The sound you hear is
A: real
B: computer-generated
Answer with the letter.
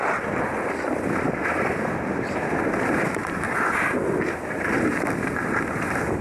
A